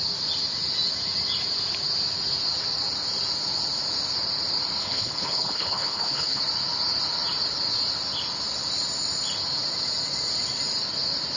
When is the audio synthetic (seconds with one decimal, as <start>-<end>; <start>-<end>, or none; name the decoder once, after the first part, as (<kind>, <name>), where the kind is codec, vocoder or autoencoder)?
4.8-6.4 (codec, HILCodec)